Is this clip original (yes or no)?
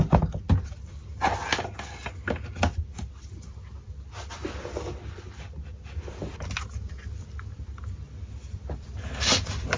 yes